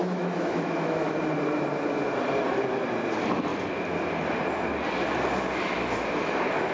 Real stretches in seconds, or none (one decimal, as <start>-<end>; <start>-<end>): 1.1-6.7